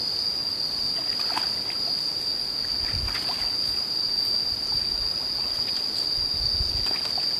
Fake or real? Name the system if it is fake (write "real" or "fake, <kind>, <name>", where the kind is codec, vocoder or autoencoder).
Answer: real